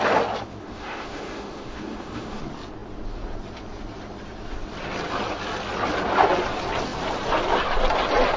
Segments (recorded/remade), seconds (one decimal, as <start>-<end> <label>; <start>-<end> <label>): 0.0-0.6 recorded; 0.6-2.4 remade; 2.4-8.4 recorded